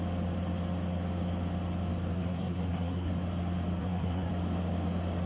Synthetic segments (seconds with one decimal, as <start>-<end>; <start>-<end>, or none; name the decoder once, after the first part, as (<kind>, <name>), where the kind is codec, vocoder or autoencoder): 2.1-3.1 (codec, SNAC); 3.8-4.3

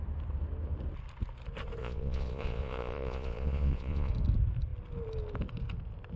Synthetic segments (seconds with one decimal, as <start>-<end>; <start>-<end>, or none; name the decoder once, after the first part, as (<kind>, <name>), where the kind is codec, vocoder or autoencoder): 1.8-4.1 (vocoder, Vocos)